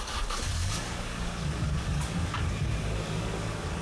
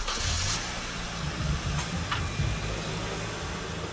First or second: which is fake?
first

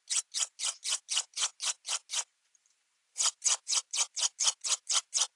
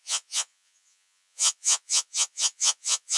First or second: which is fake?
second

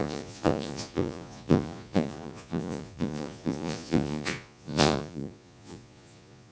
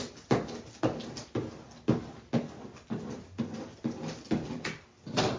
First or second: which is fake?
first